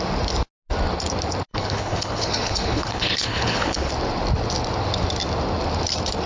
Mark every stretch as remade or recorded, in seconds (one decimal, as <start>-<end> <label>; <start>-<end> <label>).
0.0-1.5 recorded; 1.5-3.9 remade; 3.9-6.3 recorded